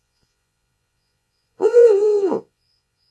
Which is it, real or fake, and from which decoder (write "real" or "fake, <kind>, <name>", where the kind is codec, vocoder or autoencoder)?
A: fake, vocoder, Vocos